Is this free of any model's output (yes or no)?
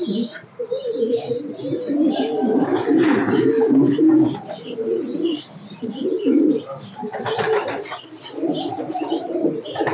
no